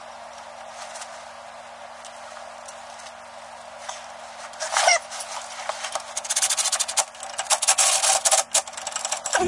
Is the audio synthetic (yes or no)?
no